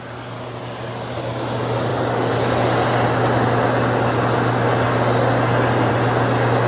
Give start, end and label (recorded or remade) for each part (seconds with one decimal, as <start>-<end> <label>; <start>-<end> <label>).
0.0-6.7 recorded